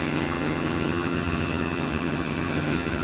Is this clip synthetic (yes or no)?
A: yes